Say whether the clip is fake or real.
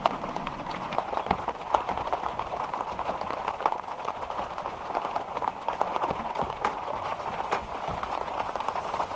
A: fake